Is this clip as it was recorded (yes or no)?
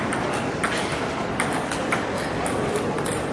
yes